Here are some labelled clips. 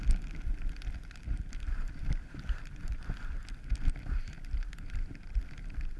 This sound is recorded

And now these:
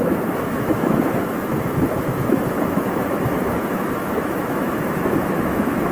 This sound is remade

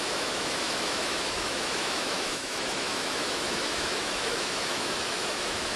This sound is remade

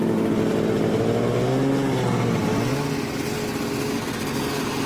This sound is recorded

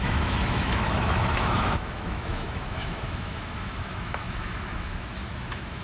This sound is remade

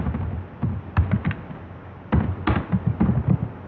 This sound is recorded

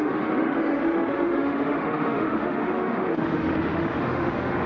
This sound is remade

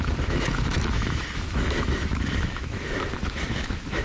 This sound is remade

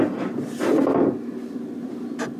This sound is recorded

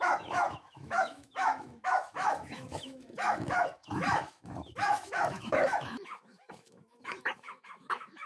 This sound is remade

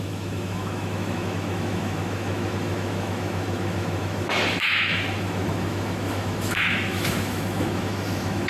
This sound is remade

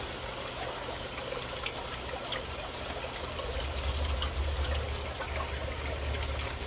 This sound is recorded